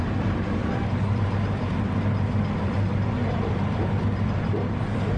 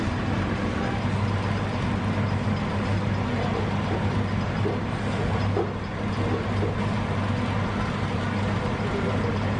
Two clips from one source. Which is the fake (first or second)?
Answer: first